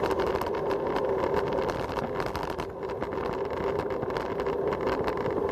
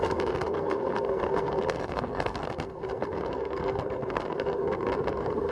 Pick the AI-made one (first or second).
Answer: second